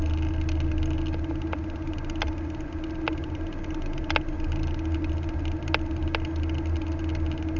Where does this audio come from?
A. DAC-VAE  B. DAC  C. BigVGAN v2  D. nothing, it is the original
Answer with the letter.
D